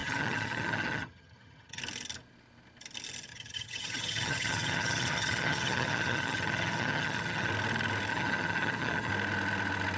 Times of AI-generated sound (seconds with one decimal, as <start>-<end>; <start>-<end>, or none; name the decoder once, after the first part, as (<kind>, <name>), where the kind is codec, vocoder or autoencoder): 0.0-1.8 (vocoder, HiFi-GAN); 3.3-7.5; 8.1-9.1